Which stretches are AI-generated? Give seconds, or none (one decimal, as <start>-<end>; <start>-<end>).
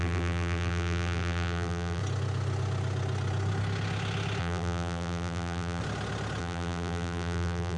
0.0-2.0; 4.4-5.8; 6.4-7.8